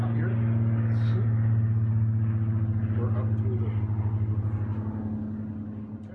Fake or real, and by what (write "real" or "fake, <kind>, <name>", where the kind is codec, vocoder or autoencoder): real